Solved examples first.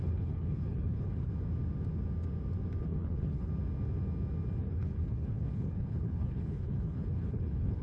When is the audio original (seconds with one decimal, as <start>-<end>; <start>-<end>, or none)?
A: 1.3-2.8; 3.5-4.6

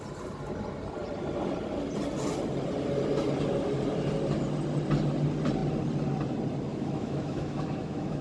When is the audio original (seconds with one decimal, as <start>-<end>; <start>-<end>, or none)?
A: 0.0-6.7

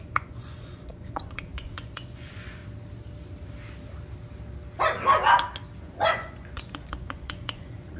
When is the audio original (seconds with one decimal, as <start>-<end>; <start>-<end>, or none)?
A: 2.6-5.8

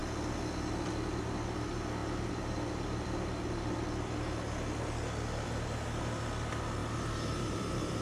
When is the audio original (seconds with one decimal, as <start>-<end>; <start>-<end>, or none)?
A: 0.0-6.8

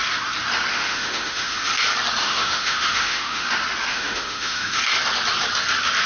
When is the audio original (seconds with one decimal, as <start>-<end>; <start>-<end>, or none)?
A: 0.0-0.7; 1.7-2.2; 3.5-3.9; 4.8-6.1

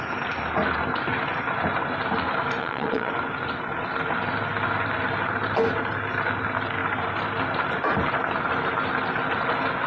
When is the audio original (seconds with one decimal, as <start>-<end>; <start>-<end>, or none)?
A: 0.0-2.6; 3.1-9.9

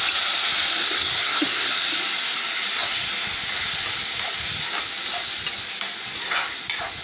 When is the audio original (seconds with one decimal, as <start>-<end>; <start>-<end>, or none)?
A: 0.0-0.8; 1.7-7.0